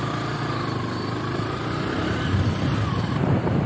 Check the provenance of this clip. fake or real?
fake